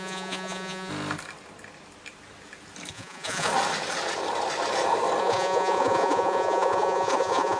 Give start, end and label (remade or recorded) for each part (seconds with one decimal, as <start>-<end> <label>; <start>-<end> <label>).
0.0-0.9 remade; 0.9-2.9 recorded; 2.9-3.5 remade; 3.5-5.2 recorded; 5.2-7.6 remade